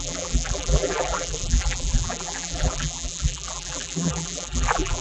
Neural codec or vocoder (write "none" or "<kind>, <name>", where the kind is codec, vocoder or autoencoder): vocoder, BigVGAN v2